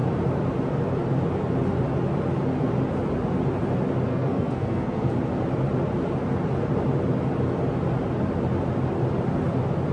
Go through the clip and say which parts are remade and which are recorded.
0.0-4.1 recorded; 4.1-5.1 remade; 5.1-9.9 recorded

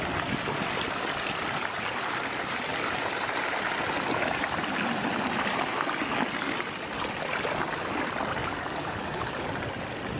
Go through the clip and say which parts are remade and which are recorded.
0.0-8.4 recorded; 8.4-9.5 remade; 9.5-10.2 recorded